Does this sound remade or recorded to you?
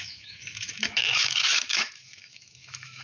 remade